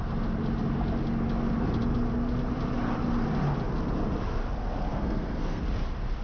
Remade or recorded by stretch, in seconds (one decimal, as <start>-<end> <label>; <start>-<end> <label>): 0.0-4.9 recorded; 4.9-5.6 remade; 5.6-6.2 recorded